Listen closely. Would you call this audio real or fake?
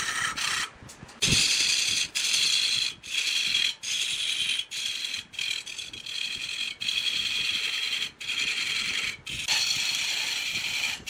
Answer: real